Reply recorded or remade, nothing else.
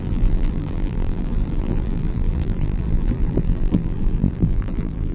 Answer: remade